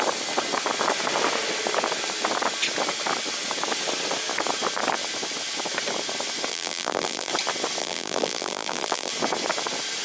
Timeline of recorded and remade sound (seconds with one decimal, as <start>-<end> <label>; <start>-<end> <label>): 0.0-6.5 recorded; 6.5-7.3 remade; 7.3-7.8 recorded; 7.8-9.1 remade; 9.1-10.0 recorded